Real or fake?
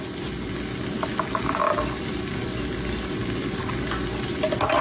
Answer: real